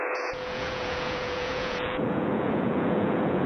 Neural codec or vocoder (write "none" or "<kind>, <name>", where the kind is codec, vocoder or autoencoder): vocoder, Vocos